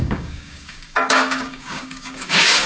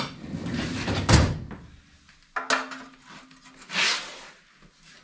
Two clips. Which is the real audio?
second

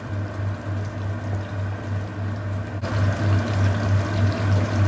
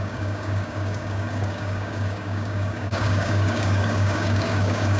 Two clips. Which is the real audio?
first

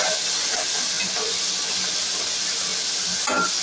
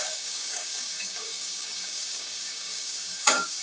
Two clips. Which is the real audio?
first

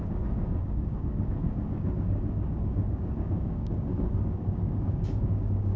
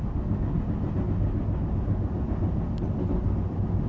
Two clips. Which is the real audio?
second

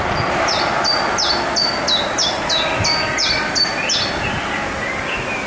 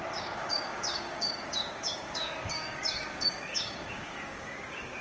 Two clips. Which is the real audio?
first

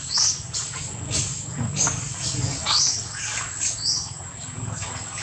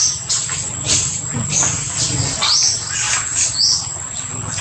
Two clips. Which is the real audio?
second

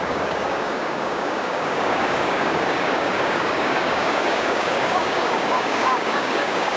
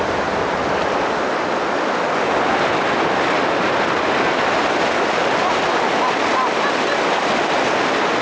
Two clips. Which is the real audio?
second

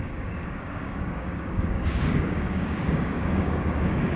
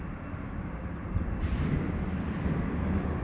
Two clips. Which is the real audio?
second